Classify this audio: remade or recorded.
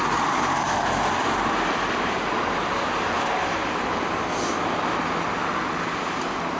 recorded